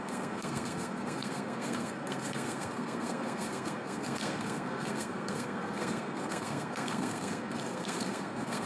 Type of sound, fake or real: fake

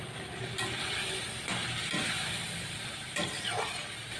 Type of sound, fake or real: real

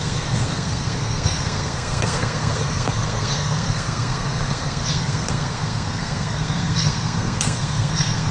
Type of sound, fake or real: fake